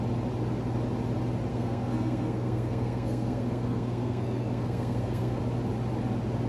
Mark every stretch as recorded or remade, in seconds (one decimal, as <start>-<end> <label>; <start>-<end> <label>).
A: 0.0-1.5 recorded; 1.5-5.4 remade; 5.4-6.5 recorded